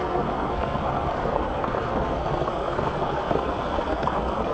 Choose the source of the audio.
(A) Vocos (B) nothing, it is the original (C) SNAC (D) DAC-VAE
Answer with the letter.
C